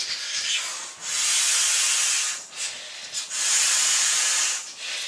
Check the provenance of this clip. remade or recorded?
recorded